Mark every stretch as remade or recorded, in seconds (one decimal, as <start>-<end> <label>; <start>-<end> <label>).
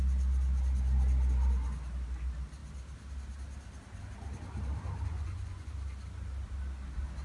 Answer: 0.0-5.1 recorded; 5.1-5.7 remade; 5.7-7.2 recorded